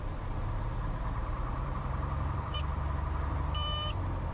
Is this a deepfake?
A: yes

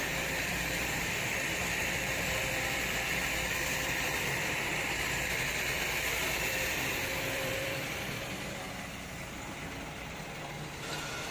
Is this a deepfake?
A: yes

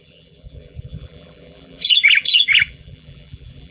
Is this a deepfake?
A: yes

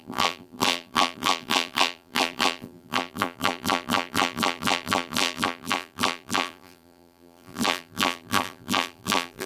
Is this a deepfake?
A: yes